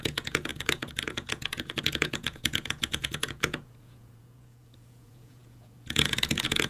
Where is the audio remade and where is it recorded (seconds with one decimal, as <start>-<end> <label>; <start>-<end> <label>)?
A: 0.0-6.7 remade